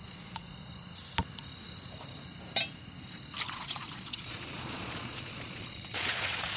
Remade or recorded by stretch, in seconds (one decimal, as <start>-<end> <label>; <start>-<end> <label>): 0.0-0.7 remade; 0.7-3.5 recorded; 3.5-6.6 remade